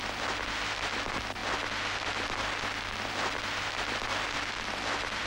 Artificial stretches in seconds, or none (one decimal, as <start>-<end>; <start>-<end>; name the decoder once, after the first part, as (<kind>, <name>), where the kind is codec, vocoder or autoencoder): none